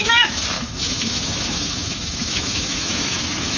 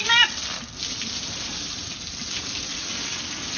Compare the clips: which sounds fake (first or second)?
first